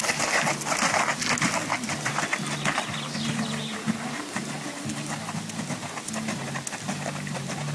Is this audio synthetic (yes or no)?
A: no